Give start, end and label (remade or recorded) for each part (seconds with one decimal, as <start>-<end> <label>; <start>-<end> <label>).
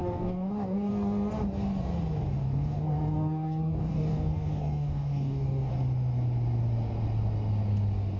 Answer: 0.0-0.9 remade; 0.9-2.4 recorded; 2.4-5.7 remade; 5.7-8.2 recorded